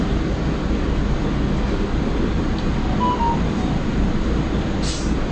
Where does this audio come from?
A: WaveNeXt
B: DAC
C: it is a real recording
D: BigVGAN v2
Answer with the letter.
C